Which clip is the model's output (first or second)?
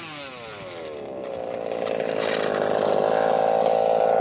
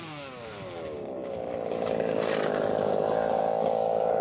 second